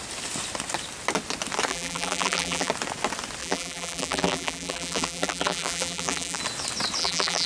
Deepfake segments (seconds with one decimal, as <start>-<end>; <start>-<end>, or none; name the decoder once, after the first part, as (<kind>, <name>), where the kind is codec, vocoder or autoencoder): 1.7-2.7 (vocoder, BigVGAN v2); 3.4-6.4; 7.0-7.5